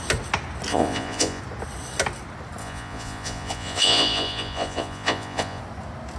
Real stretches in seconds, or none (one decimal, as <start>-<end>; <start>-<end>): 0.0-0.7; 1.4-2.6; 5.6-6.2